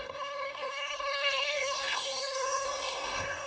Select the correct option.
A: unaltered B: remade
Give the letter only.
B